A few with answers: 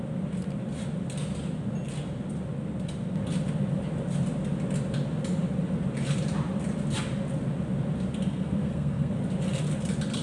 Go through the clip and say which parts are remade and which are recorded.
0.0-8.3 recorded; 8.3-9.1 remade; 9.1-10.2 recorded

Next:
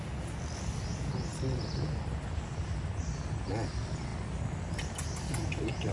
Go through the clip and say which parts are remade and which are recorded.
0.0-5.9 recorded

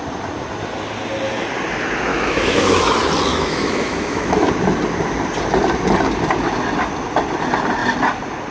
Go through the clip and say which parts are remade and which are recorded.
0.0-2.1 recorded; 2.1-2.9 remade; 2.9-3.3 recorded; 3.3-4.5 remade; 4.5-8.5 recorded

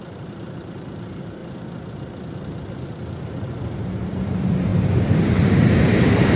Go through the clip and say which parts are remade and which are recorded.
0.0-1.4 remade; 1.4-3.4 recorded; 3.4-6.4 remade

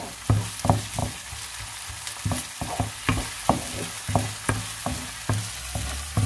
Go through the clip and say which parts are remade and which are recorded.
0.0-6.3 recorded

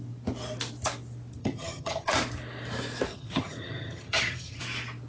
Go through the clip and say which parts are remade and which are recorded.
0.0-1.4 recorded; 1.4-2.1 remade; 2.1-3.1 recorded; 3.1-4.6 remade; 4.6-5.1 recorded

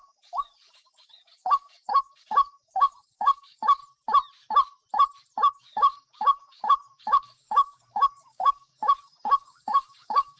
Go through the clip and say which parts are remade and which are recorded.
0.0-3.8 remade; 3.8-5.5 recorded; 5.5-10.4 remade

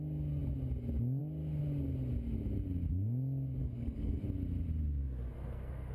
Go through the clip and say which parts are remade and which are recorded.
0.0-3.6 recorded; 3.6-4.2 remade; 4.2-5.0 recorded; 5.0-5.9 remade